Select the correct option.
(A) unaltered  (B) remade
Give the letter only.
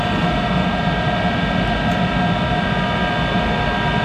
A